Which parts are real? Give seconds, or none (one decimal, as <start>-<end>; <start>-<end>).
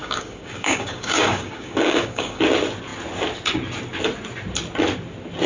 2.4-5.5